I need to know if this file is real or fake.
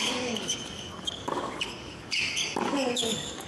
fake